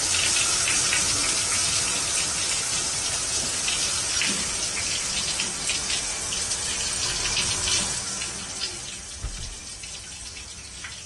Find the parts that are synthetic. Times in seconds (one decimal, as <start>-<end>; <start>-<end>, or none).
none